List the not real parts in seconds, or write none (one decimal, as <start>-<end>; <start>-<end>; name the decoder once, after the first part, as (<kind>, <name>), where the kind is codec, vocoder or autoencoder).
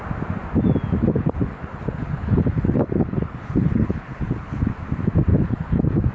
1.0-4.7 (codec, HILCodec); 5.3-6.1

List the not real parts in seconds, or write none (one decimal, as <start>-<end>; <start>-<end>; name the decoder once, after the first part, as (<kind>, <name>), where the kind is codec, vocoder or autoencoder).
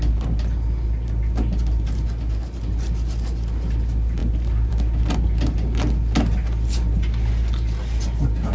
none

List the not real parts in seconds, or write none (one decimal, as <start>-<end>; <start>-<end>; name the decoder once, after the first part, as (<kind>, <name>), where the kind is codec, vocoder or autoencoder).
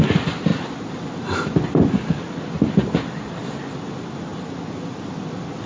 none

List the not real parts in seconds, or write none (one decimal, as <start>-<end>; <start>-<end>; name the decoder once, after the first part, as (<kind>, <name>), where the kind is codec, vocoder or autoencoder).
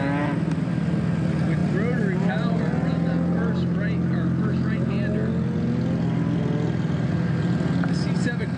none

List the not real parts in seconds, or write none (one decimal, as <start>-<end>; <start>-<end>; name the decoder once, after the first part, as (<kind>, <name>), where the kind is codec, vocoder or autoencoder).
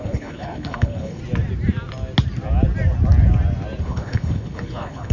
0.0-1.2 (codec, HILCodec); 3.8-5.1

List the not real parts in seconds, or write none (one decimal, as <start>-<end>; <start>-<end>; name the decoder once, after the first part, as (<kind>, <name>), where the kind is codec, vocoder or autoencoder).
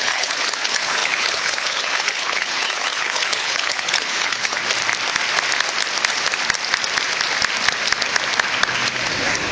0.0-4.6 (codec, HILCodec)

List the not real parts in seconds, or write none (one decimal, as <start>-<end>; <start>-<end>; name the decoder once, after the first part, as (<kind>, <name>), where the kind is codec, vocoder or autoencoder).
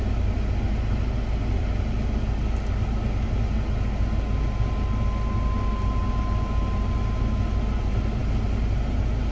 none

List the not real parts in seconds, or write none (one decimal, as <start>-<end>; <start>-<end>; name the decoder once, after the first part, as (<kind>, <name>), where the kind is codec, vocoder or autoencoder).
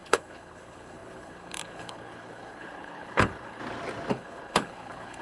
0.0-3.6 (codec, HILCodec); 4.1-5.2